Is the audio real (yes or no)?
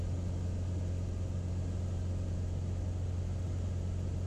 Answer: yes